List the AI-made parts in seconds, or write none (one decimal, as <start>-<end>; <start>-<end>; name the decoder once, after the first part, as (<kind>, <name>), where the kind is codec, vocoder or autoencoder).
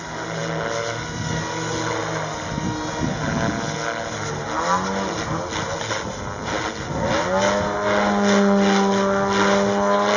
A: none